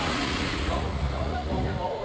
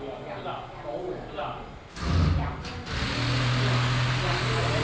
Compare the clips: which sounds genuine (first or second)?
second